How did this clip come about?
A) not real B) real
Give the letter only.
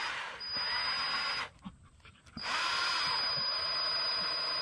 B